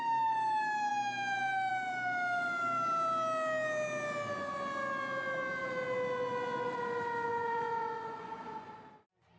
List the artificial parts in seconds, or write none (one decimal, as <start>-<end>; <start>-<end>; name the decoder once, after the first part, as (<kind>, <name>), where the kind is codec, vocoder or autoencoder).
7.3-8.8 (vocoder, Vocos)